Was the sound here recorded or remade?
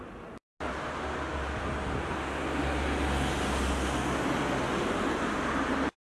recorded